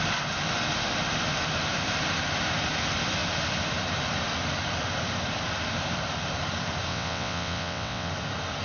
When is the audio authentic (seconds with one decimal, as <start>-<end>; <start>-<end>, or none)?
0.0-6.9; 8.1-8.6

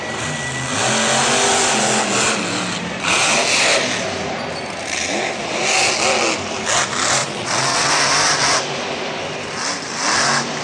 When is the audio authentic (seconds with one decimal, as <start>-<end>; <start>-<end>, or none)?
0.0-7.2; 7.9-10.6